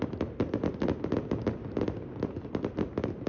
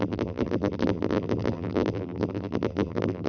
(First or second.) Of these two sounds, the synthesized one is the second